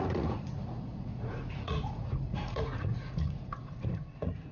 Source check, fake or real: fake